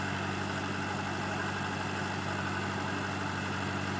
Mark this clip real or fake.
real